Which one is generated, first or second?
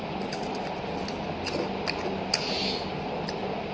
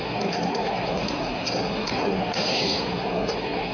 second